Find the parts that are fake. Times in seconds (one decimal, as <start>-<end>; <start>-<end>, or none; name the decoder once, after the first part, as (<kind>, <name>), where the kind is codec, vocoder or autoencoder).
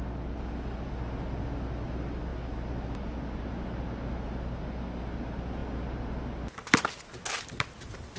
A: none